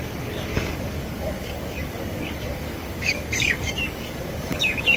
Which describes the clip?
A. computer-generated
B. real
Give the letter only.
A